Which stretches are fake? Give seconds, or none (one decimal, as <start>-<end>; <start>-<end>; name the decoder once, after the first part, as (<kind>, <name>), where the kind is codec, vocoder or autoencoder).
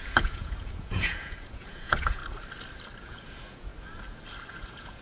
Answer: 0.0-2.2 (vocoder, Vocos); 3.0-3.7; 4.5-5.0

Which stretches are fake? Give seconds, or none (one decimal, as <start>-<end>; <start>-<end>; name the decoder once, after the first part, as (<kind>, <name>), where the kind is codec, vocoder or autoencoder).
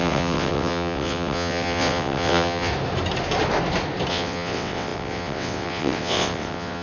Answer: 0.0-2.7 (vocoder, WaveNeXt); 4.1-6.8